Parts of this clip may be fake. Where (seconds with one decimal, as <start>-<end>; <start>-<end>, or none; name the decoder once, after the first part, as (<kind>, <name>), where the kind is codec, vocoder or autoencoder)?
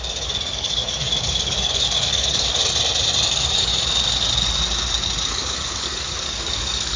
0.0-2.6 (codec, DAC); 3.3-3.7; 5.3-7.0